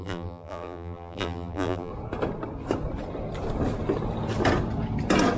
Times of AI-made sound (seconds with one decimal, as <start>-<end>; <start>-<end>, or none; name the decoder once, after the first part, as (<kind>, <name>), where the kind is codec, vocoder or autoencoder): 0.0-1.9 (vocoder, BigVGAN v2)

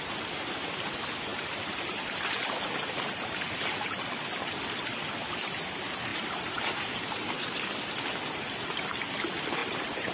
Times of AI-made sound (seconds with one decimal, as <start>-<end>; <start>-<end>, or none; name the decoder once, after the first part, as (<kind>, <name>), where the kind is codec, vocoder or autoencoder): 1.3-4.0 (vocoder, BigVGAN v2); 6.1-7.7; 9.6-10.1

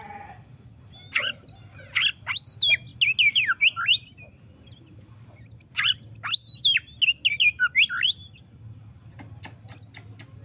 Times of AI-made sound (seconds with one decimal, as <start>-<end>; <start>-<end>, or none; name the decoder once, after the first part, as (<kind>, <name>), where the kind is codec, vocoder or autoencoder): none

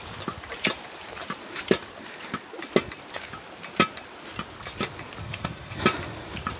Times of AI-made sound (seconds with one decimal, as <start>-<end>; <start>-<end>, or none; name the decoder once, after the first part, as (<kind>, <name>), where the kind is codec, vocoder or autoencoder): 5.2-5.8 (codec, SNAC)